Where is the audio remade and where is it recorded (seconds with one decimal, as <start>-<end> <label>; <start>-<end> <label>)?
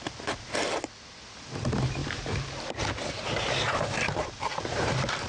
0.0-2.0 recorded; 2.0-5.3 remade